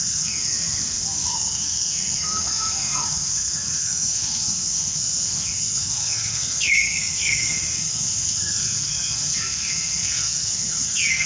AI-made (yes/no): yes